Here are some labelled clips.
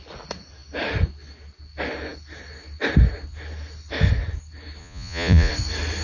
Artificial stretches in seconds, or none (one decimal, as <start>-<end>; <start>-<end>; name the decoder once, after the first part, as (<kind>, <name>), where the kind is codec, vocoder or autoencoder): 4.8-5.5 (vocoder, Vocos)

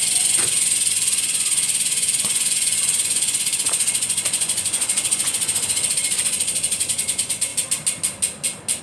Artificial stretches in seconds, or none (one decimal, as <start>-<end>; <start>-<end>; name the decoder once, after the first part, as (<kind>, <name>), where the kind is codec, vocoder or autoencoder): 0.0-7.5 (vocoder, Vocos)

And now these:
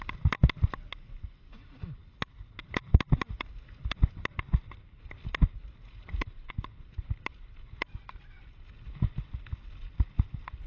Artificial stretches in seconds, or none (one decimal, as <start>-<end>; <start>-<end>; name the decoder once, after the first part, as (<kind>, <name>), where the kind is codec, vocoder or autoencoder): 5.8-6.5 (vocoder, Vocos)

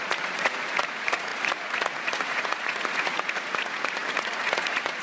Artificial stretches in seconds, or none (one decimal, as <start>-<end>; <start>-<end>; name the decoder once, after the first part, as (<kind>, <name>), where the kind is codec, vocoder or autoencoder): 0.0-5.0 (vocoder, Vocos)

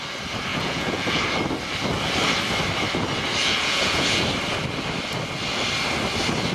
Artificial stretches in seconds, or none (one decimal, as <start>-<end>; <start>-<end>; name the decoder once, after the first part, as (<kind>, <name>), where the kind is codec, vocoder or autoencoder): 0.5-1.2 (vocoder, Vocos); 3.4-4.2